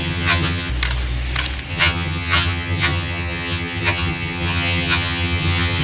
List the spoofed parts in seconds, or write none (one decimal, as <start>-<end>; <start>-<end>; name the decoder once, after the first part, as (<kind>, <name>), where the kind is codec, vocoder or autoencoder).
0.0-0.7 (vocoder, HiFi-GAN); 1.7-5.8